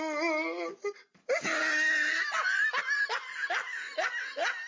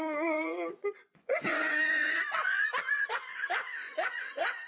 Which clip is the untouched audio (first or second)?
first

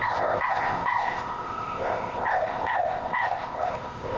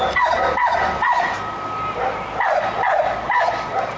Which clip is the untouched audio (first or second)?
second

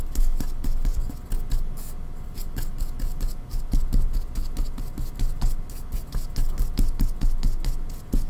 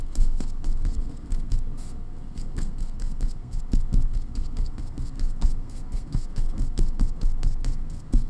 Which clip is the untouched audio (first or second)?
first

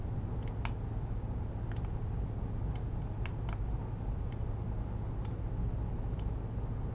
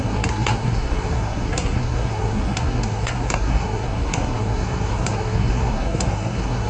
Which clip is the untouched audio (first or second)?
first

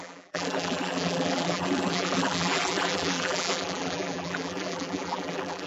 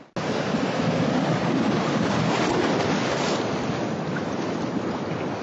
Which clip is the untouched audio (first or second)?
second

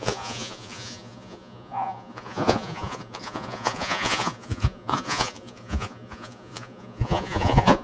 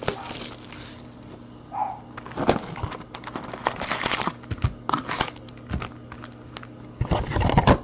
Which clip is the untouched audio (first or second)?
second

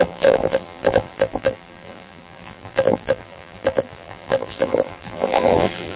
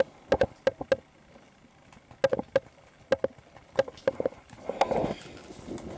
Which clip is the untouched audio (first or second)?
second